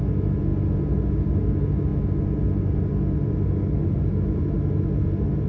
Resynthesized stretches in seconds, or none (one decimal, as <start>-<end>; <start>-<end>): none